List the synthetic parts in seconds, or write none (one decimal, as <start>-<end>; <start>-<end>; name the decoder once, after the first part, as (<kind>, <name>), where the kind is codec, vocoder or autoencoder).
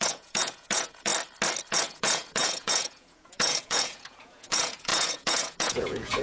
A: 0.0-1.1 (vocoder, Vocos); 1.7-6.2